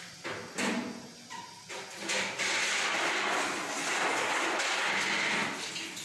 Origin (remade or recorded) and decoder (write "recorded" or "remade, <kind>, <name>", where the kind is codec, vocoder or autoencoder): recorded